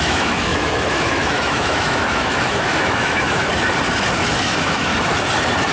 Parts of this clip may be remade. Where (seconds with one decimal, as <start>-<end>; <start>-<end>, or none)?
0.0-3.5; 4.3-4.9